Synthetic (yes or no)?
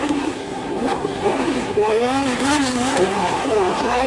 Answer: yes